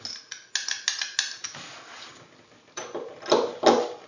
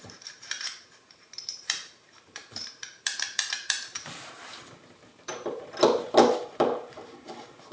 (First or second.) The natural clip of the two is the first